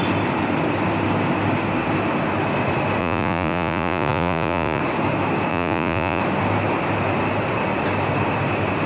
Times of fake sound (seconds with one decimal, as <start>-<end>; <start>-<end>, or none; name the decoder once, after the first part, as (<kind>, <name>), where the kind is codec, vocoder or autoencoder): 3.0-4.8 (vocoder, Vocos); 5.5-6.2